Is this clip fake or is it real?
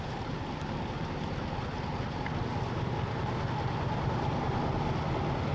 real